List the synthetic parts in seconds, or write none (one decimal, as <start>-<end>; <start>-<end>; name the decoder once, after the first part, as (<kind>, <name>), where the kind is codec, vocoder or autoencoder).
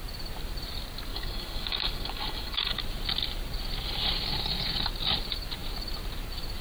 1.1-2.8 (codec, DAC)